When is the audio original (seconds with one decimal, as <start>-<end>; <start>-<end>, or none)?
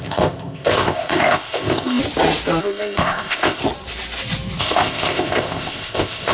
2.0-2.6; 3.6-4.6